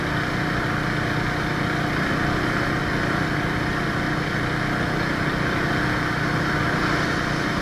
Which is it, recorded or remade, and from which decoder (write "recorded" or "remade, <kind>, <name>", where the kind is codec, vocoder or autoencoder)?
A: recorded